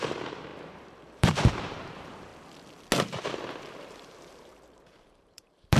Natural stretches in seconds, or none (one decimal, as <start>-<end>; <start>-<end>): 2.3-3.8